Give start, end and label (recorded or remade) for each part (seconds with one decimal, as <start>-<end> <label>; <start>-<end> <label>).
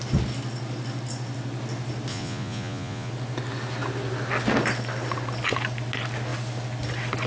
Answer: 0.0-2.1 recorded; 2.1-3.1 remade; 3.1-7.3 recorded